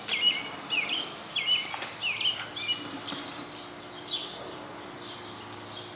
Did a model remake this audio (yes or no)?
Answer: no